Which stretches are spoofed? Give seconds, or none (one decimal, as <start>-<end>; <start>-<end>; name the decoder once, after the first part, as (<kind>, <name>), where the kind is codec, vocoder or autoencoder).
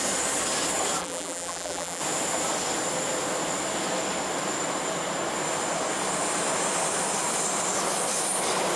1.0-2.0 (vocoder, BigVGAN v2)